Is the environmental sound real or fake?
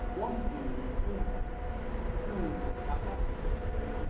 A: real